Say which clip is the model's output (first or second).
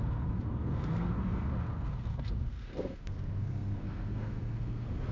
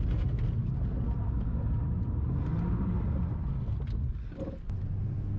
first